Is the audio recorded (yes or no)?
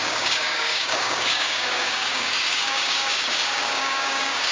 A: no